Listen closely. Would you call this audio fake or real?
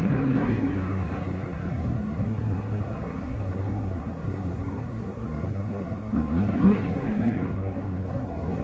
fake